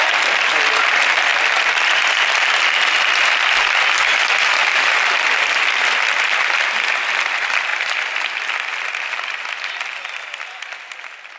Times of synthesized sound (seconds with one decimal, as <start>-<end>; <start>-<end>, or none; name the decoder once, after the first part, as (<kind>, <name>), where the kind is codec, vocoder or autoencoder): 1.3-1.9 (vocoder, BigVGAN v2); 4.6-6.6